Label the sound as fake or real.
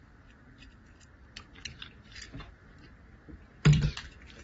real